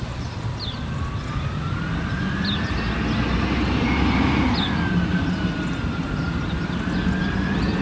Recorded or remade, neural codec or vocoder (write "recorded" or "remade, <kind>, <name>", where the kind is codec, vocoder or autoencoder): recorded